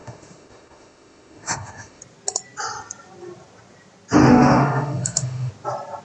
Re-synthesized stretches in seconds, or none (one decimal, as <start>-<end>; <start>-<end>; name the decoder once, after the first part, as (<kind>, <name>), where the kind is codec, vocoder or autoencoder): 0.0-2.0 (autoencoder, DAC-VAE); 4.2-5.5